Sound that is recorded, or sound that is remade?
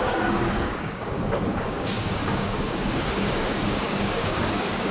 remade